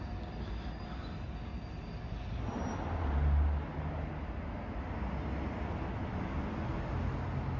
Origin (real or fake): real